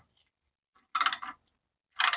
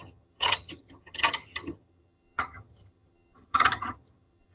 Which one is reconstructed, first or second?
second